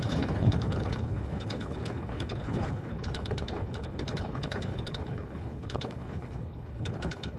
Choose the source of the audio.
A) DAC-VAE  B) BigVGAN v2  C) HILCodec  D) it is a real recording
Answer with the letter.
C